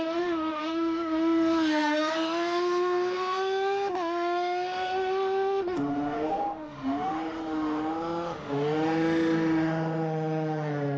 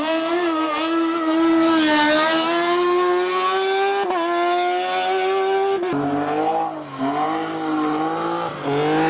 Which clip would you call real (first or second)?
second